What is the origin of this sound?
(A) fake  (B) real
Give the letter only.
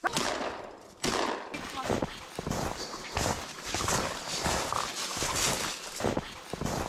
B